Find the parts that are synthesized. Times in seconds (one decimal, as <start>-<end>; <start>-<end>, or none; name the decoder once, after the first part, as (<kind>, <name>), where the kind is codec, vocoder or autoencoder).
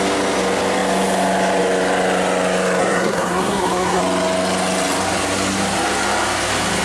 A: 2.8-4.0 (codec, SNAC)